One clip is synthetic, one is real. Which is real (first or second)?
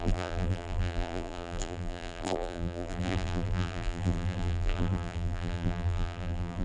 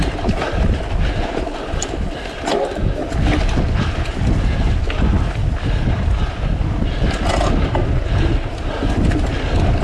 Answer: second